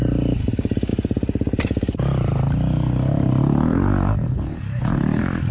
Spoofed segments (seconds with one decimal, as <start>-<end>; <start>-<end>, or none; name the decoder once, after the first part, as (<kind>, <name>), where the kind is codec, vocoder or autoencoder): 0.0-5.5 (vocoder, BigVGAN v2)